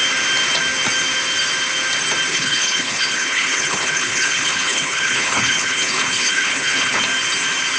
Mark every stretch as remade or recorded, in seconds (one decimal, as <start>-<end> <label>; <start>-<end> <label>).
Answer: 0.0-2.3 recorded; 2.3-7.0 remade; 7.0-7.8 recorded